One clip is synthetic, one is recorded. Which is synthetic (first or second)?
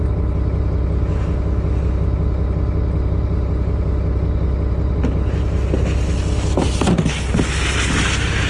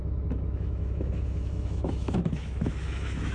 second